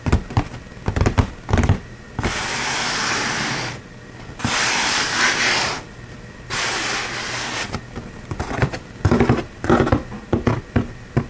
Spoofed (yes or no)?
no